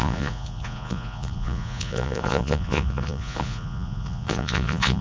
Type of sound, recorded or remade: remade